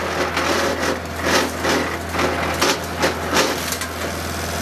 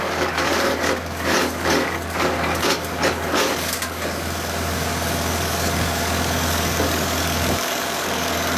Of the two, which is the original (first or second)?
first